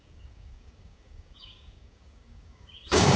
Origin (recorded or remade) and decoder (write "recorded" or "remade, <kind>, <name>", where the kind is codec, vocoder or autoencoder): remade, codec, DAC